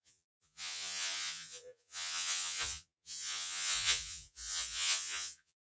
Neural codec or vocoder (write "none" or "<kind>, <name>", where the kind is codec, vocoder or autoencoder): vocoder, Vocos